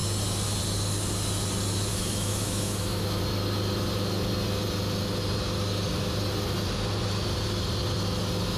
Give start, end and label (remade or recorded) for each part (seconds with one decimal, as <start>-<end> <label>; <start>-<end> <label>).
0.0-1.9 recorded; 1.9-3.2 remade; 3.2-8.6 recorded